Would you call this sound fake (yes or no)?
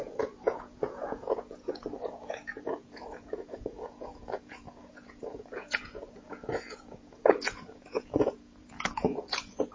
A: yes